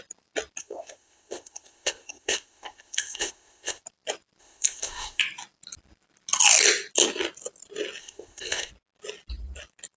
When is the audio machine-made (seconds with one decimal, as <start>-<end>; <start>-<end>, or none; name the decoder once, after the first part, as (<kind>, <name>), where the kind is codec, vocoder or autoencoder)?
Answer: 0.6-3.8 (codec, ZipCodec); 4.4-5.2; 8.0-8.7